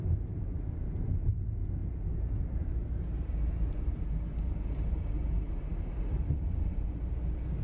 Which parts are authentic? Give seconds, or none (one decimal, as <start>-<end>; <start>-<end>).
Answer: none